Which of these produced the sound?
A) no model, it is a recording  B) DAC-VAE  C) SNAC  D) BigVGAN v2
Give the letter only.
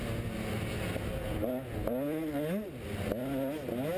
A